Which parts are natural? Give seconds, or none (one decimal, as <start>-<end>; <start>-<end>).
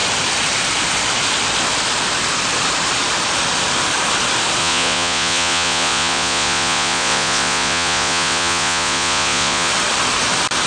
0.0-4.6; 9.7-10.7